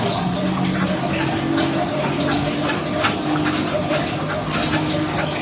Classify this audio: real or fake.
real